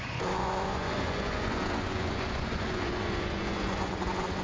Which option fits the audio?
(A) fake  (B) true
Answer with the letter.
A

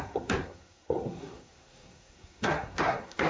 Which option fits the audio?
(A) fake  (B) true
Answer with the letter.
A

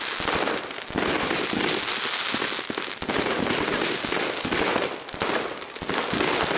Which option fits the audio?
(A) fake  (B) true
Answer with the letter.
B